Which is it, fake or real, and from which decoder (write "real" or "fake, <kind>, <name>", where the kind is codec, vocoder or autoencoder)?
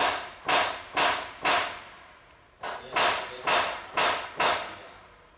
real